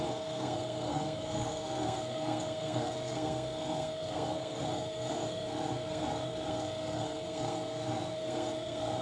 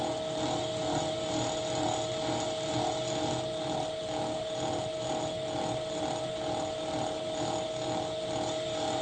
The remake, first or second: first